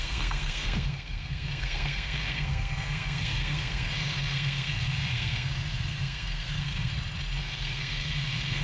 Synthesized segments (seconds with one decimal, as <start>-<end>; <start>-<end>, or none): 0.0-6.9; 7.4-8.6